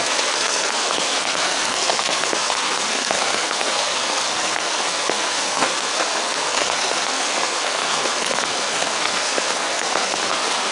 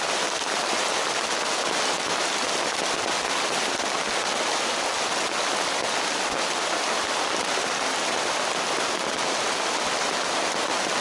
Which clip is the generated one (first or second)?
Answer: first